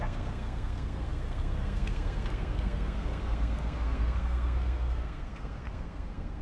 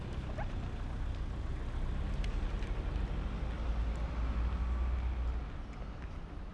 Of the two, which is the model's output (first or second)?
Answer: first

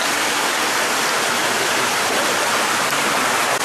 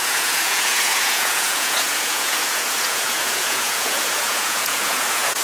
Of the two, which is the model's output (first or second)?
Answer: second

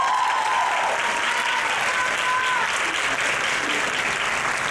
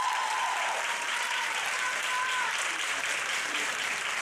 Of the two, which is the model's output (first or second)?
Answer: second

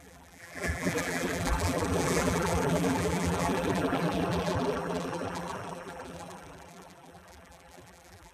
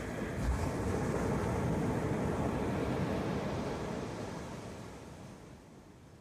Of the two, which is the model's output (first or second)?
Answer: first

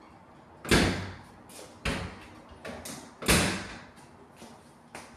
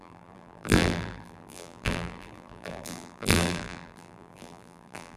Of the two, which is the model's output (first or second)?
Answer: second